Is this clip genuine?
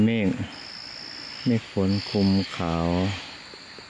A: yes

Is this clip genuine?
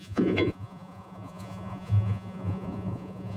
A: no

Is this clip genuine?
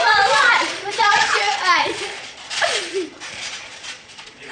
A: no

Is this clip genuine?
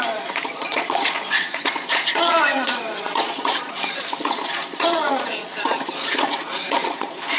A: no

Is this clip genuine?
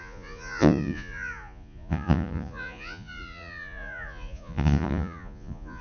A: no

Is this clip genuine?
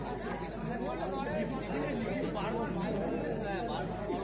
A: yes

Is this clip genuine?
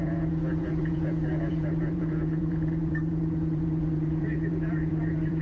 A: no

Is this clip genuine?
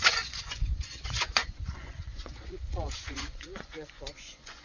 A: no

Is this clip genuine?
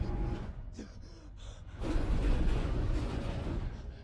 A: no